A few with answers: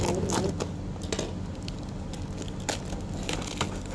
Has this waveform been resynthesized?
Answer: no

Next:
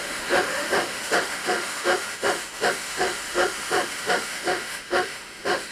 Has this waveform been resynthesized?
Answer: yes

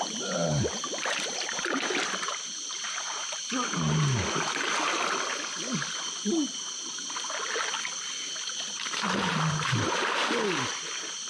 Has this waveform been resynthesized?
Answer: no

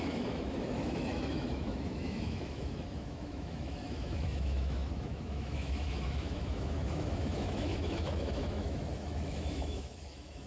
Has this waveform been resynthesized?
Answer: yes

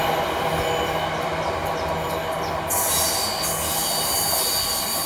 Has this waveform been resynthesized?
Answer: no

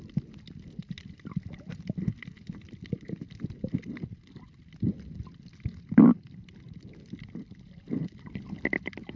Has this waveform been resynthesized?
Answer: no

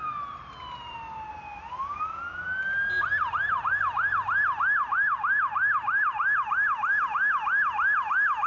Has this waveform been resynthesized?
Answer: no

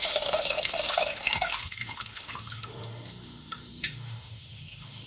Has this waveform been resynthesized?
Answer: yes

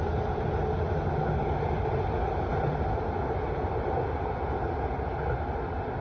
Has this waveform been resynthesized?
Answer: no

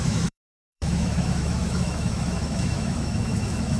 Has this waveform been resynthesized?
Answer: yes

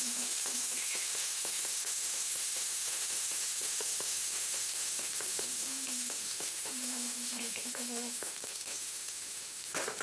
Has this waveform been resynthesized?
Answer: yes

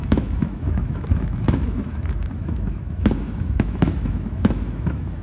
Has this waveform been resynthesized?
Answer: yes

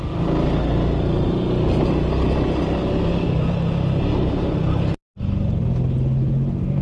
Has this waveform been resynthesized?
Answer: no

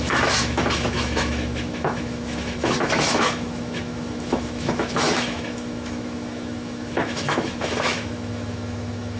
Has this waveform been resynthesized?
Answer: yes